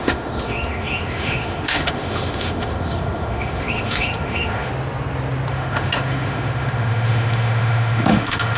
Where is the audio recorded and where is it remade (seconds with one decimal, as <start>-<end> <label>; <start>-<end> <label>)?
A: 0.0-4.7 remade; 4.7-5.5 recorded; 5.5-8.6 remade